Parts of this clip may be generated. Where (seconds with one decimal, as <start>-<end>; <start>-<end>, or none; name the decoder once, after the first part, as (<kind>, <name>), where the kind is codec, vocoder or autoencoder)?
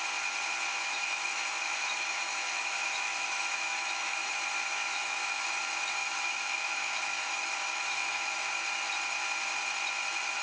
0.7-4.3 (autoencoder, DAC-VAE); 4.8-5.6; 6.0-8.5